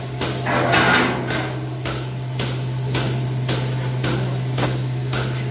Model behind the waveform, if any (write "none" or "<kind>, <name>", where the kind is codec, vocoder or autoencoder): none